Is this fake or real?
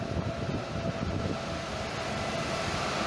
real